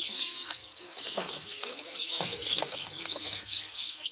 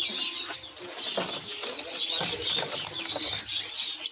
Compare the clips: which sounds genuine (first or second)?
second